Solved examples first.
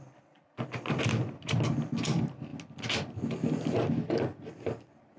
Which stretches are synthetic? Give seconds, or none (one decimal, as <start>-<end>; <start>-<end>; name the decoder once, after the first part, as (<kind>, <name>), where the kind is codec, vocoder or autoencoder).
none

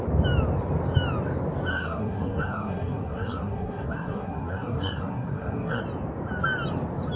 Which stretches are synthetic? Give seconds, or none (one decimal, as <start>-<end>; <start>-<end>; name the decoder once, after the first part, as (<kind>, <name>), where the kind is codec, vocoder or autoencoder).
1.7-5.8 (codec, SNAC)

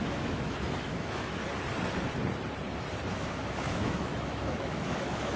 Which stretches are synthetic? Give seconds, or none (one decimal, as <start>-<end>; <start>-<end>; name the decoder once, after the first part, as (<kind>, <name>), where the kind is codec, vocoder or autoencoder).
0.0-1.4 (autoencoder, DAC-VAE); 3.1-5.4

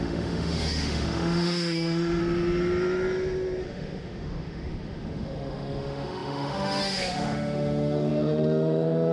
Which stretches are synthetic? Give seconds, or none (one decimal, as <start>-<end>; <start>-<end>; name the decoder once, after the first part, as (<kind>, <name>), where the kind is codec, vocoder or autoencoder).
0.0-2.2 (autoencoder, DAC-VAE); 3.6-9.1

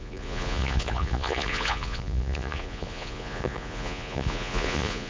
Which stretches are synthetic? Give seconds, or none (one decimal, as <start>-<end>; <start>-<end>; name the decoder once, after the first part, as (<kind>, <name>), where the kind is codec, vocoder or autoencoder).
0.0-5.1 (vocoder, Vocos)

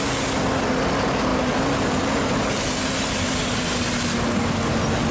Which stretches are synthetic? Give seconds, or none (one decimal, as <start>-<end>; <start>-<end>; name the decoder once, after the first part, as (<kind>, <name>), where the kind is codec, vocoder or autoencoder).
none

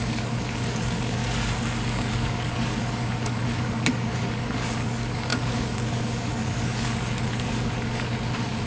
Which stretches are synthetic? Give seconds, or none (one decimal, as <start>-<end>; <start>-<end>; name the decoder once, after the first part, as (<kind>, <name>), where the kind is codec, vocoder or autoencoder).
0.0-1.2 (codec, DAC); 1.8-8.7